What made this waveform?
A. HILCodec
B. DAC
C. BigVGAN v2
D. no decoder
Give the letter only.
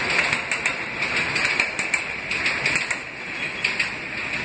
D